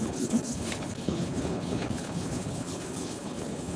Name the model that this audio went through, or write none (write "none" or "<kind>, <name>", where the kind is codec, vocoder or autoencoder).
codec, HILCodec